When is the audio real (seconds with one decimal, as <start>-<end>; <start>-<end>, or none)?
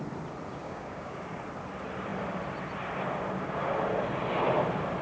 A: 0.0-0.5; 1.4-5.0